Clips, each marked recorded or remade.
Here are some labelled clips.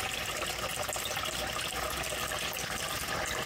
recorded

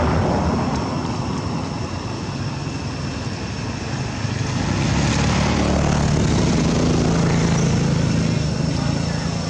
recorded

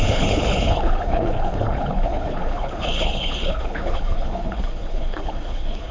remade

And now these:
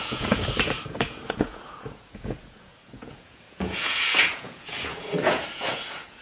remade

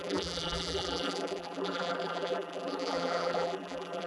remade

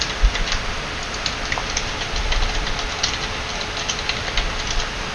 recorded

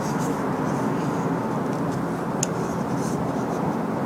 recorded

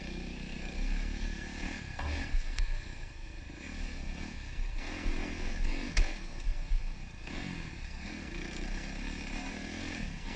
remade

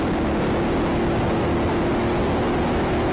recorded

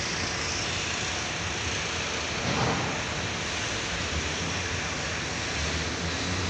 recorded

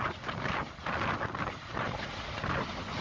recorded